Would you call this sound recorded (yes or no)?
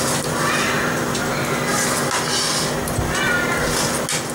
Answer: yes